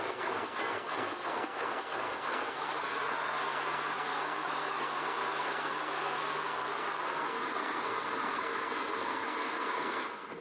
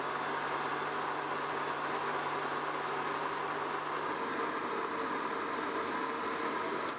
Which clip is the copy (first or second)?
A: first